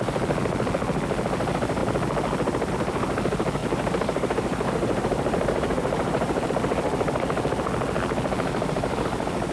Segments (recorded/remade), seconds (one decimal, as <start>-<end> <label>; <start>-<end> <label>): 0.0-3.6 recorded; 3.6-6.5 remade; 6.5-9.5 recorded